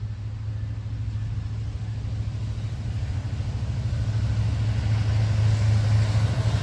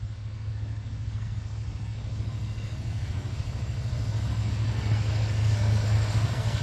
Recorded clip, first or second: first